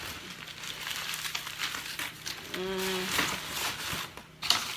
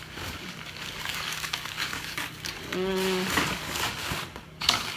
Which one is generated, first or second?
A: second